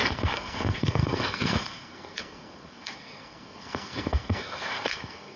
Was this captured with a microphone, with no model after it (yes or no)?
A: no